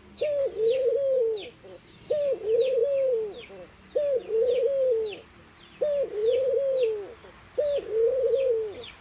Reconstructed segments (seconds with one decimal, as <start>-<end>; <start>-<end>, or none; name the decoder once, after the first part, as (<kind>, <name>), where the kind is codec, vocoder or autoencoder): none